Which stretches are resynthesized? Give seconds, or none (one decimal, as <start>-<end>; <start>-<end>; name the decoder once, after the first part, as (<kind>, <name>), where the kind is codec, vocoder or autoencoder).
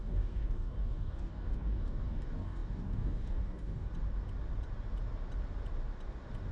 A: 0.0-3.9 (codec, DAC)